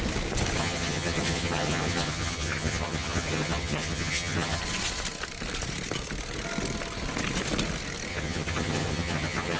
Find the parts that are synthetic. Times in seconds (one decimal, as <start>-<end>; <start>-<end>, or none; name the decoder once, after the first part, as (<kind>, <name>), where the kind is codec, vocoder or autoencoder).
0.6-4.6 (vocoder, HiFi-GAN); 8.1-9.6